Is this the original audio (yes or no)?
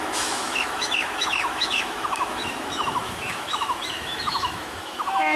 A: no